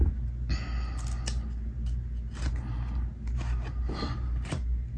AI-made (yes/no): no